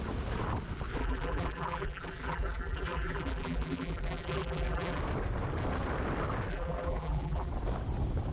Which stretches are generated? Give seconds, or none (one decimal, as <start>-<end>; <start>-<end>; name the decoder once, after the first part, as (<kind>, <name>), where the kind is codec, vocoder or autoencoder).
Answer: 1.0-5.0 (vocoder, BigVGAN v2); 6.5-7.5